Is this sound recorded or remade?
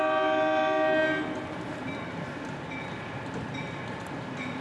recorded